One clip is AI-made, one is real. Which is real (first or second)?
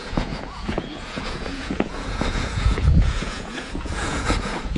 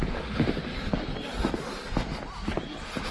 second